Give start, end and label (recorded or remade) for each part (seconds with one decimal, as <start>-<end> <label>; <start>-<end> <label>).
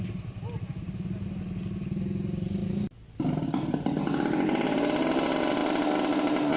0.0-6.6 recorded